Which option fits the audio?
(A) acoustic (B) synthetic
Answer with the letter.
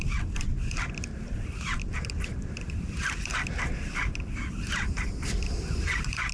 A